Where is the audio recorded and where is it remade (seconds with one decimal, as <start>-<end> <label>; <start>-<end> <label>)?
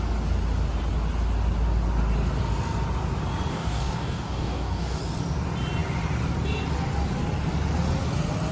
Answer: 0.0-3.5 recorded; 3.5-5.0 remade; 5.0-8.5 recorded